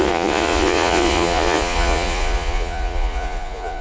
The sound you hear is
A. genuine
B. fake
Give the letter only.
B